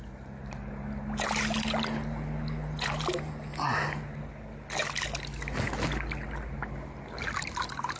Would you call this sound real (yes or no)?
yes